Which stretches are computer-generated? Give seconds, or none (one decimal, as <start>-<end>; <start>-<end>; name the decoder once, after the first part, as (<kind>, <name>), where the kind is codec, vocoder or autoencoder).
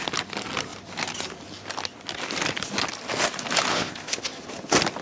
3.7-4.2 (codec, ZipCodec)